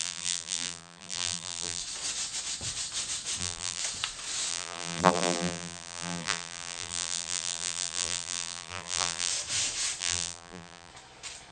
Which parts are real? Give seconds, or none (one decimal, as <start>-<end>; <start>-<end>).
1.8-3.4; 3.8-4.5; 9.3-10.0; 10.9-11.5

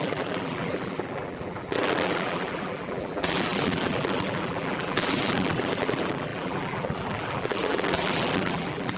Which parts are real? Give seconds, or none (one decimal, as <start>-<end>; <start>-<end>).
none

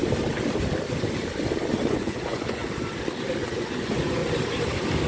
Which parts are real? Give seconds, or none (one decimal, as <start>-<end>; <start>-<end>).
0.0-1.9; 2.6-3.5; 4.2-5.1

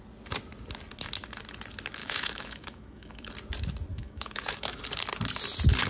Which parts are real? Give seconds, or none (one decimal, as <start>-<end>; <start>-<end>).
0.0-2.0; 3.3-3.9; 4.8-5.9

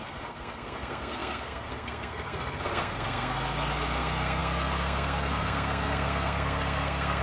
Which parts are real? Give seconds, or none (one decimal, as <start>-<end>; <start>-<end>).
none

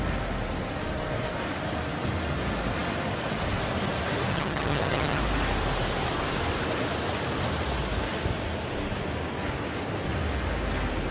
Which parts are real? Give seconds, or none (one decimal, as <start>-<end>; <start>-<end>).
0.0-4.3; 5.2-11.1

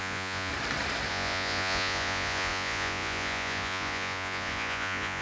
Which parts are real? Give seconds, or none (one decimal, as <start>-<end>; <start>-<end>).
0.5-1.1